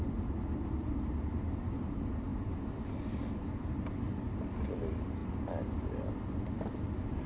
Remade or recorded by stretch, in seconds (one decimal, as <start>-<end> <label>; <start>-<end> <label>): 0.0-2.3 recorded; 2.3-3.9 remade; 3.9-5.2 recorded; 5.2-5.7 remade; 5.7-7.3 recorded